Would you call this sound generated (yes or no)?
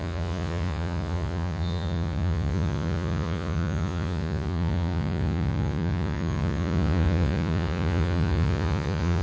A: yes